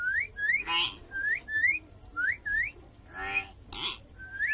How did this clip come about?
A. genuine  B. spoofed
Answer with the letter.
A